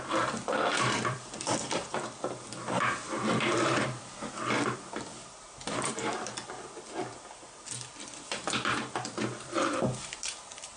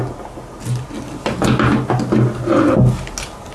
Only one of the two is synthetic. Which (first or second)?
first